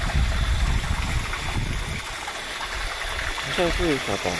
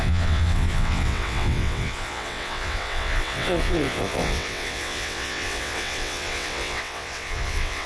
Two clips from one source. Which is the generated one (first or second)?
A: second